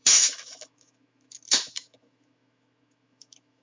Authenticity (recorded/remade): remade